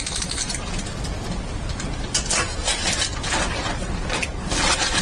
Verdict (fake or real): real